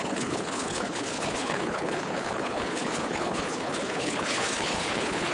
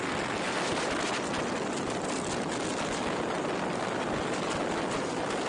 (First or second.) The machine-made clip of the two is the first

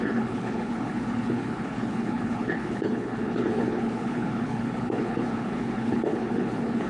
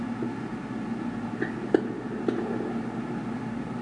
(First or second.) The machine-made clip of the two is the first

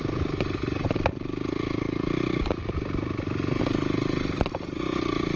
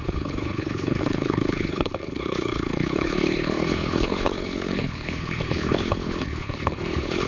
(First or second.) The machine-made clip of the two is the second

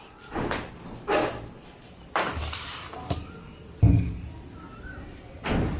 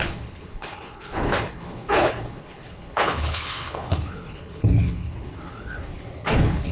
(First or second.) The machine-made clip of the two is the second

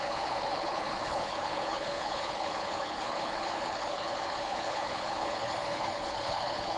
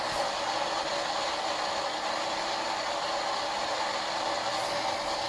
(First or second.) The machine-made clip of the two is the first